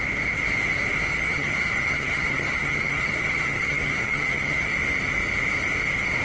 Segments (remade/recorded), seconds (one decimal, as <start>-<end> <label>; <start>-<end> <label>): 0.0-1.1 recorded; 1.1-4.7 remade; 4.7-6.2 recorded